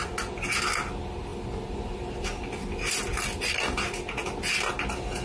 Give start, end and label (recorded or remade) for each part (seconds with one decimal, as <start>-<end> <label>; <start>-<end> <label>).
0.0-5.2 recorded